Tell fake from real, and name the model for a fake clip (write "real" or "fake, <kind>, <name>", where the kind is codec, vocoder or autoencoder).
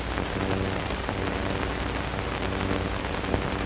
real